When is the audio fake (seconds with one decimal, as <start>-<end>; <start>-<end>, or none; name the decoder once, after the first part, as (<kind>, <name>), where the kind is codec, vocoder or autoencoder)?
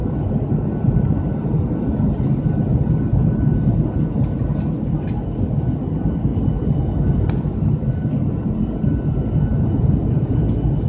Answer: 9.5-10.4 (vocoder, Vocos)